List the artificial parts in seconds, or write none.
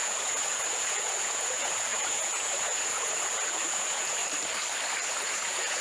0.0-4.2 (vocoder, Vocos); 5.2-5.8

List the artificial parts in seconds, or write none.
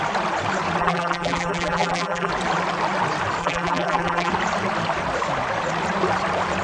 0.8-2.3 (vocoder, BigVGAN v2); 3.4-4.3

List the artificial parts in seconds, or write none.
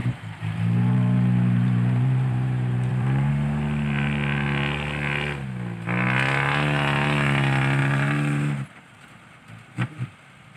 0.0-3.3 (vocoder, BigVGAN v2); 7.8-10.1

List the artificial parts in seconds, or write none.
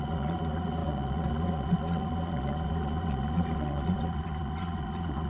0.0-5.3 (vocoder, Vocos)